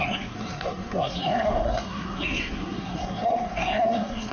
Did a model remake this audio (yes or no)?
yes